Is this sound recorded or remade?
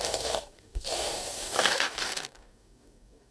remade